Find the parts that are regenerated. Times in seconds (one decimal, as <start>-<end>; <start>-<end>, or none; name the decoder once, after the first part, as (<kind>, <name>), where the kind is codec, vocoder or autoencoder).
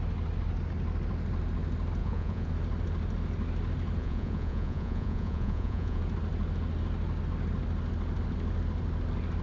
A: 2.0-2.5 (vocoder, Vocos); 4.0-6.0